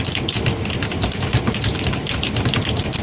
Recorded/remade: recorded